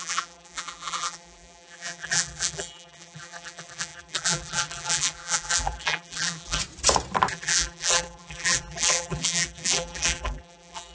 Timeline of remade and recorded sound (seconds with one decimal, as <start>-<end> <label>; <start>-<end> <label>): 0.0-6.6 remade; 6.6-7.3 recorded; 7.3-10.9 remade